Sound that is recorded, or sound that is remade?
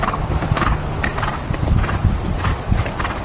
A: recorded